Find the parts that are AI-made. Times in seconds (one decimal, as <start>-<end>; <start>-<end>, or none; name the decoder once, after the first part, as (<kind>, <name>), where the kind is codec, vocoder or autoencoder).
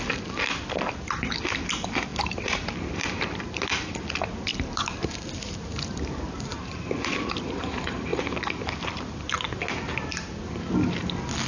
2.1-4.0 (vocoder, BigVGAN v2); 4.5-7.6